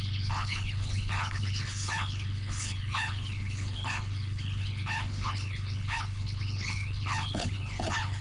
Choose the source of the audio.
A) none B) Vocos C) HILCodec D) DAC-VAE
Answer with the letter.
C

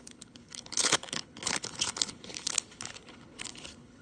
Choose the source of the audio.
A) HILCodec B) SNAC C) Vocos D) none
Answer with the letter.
A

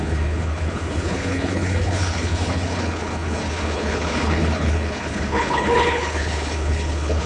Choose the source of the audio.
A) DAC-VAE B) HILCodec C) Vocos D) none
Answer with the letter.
B